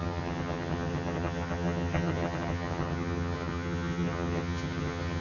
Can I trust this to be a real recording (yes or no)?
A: no